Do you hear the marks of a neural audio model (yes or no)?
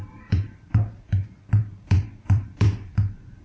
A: yes